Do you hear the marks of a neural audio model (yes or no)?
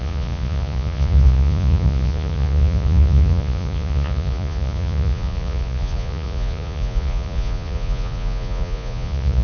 yes